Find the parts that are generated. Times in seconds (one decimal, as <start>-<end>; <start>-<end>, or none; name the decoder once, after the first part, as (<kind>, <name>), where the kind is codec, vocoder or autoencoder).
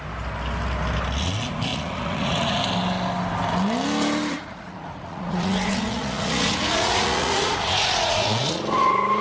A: 1.7-2.6 (vocoder, Vocos); 4.3-8.6